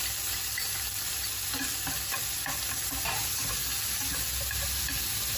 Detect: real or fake real